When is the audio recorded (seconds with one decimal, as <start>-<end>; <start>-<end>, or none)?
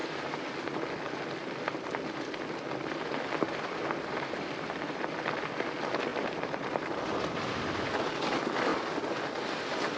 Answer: 0.0-10.0